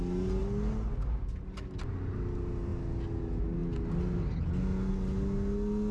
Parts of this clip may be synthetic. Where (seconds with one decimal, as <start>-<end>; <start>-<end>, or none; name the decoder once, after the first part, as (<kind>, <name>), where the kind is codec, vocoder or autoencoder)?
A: none